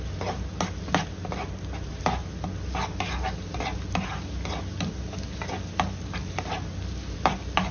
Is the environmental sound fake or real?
real